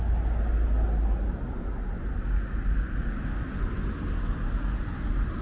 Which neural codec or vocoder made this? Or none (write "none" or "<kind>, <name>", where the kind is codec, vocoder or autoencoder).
none